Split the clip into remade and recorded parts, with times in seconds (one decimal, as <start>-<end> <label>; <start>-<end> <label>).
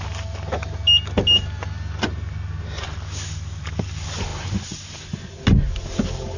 0.0-6.4 recorded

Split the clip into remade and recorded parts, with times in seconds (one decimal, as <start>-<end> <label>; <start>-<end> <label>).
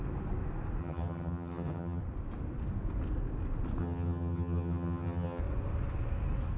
0.0-0.8 recorded; 0.8-2.0 remade; 2.0-3.8 recorded; 3.8-5.4 remade; 5.4-6.6 recorded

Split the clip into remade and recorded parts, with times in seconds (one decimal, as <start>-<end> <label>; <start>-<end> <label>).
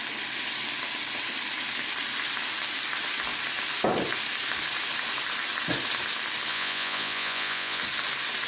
0.0-6.5 recorded; 6.5-7.8 remade; 7.8-8.5 recorded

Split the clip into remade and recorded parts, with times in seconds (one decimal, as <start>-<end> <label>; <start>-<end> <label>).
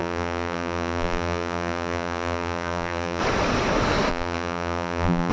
0.0-3.2 remade; 3.2-4.1 recorded; 4.1-5.3 remade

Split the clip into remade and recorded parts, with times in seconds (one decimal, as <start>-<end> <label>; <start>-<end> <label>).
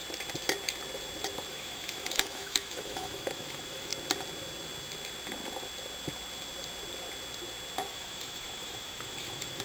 0.0-1.5 recorded; 1.5-3.9 remade; 3.9-7.9 recorded; 7.9-9.6 remade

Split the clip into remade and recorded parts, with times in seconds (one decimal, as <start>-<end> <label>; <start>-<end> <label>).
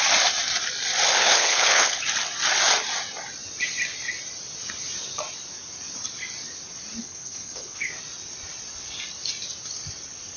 0.0-1.2 recorded; 1.2-2.0 remade; 2.0-7.0 recorded; 7.0-7.9 remade; 7.9-10.4 recorded